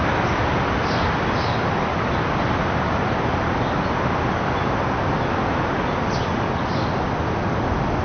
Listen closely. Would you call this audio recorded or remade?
recorded